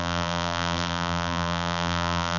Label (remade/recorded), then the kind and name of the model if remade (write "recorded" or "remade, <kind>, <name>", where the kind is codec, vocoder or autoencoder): remade, vocoder, BigVGAN v2